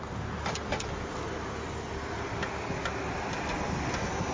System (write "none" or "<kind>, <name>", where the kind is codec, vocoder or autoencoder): none